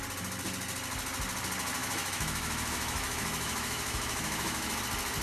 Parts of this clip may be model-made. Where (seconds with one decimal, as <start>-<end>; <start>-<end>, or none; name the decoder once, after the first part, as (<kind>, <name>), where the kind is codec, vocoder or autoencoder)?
1.8-4.8 (autoencoder, DAC-VAE)